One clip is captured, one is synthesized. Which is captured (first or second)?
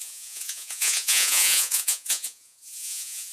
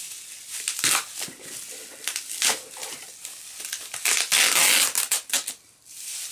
second